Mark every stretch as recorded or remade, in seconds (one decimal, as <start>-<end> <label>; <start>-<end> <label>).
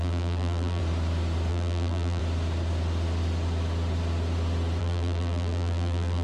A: 0.0-0.8 remade; 0.8-1.5 recorded; 1.5-2.2 remade; 2.2-4.8 recorded; 4.8-6.2 remade